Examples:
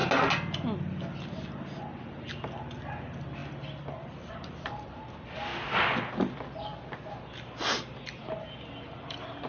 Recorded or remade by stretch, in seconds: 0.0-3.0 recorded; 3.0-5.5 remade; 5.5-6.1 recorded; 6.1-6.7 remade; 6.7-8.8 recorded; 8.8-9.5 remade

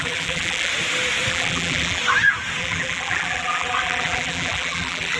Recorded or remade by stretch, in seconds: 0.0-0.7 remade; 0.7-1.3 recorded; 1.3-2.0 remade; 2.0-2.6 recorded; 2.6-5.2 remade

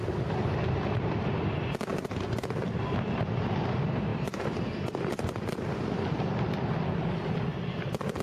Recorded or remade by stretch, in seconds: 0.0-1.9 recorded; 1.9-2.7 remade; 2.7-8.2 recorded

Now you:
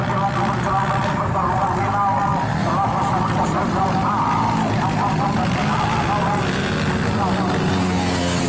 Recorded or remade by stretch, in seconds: 0.0-8.5 recorded

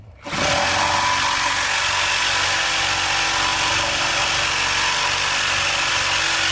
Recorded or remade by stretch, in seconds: 0.0-3.5 recorded; 3.5-4.1 remade; 4.1-6.5 recorded